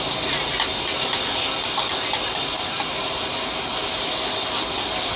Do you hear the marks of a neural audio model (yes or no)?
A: no